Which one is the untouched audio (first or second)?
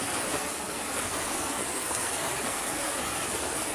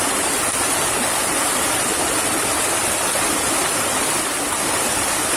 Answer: second